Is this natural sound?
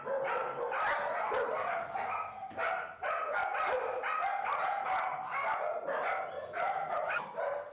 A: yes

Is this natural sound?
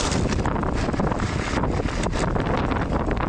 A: yes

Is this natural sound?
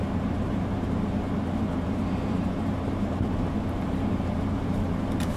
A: no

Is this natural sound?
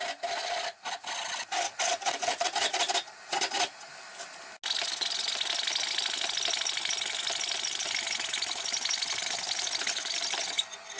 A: yes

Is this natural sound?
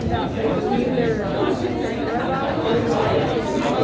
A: no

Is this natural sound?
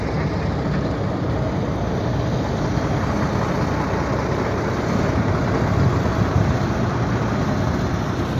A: yes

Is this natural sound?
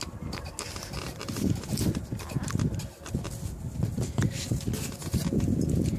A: yes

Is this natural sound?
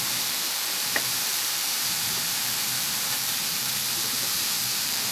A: no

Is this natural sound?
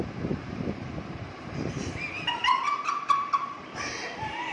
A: no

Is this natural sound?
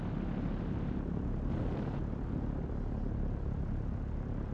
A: yes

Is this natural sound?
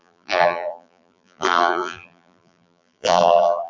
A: no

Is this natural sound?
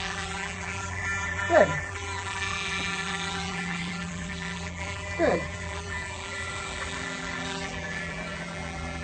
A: no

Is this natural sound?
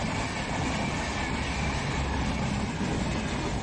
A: yes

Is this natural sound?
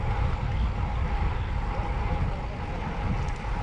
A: yes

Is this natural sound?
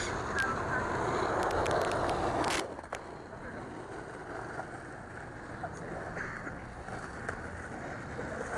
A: no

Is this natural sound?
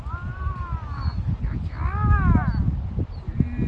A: yes